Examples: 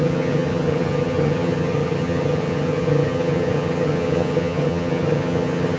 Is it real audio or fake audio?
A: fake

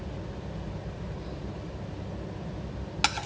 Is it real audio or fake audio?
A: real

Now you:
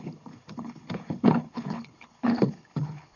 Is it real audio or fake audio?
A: fake